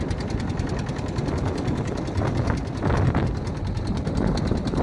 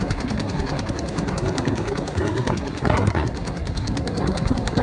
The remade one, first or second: second